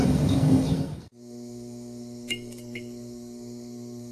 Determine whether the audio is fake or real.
fake